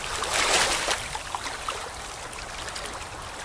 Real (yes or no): yes